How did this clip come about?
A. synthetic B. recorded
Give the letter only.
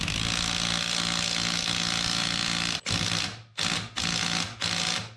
B